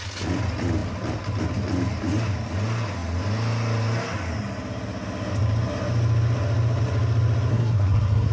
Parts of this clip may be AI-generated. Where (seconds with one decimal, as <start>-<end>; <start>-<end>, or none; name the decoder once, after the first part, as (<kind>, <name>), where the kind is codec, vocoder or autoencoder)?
7.5-8.3 (codec, SNAC)